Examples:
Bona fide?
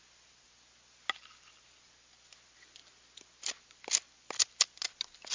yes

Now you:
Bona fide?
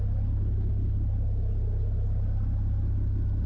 yes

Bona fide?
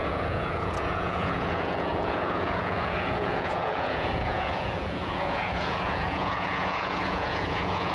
no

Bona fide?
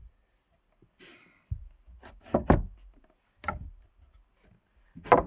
yes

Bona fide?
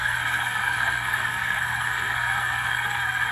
no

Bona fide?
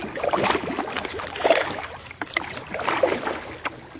yes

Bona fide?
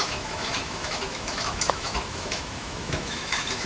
no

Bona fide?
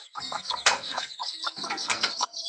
no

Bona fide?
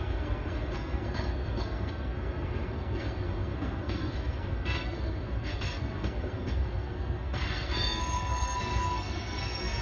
no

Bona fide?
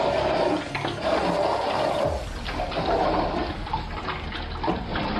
yes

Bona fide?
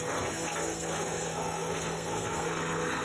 no